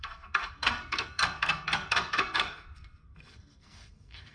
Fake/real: fake